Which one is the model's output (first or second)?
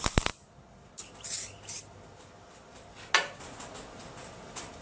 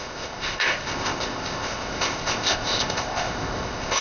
second